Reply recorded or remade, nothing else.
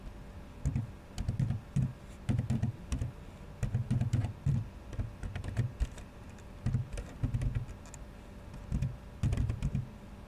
recorded